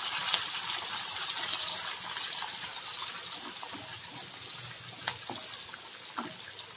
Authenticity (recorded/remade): recorded